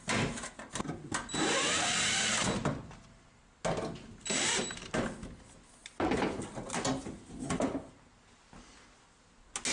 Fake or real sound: real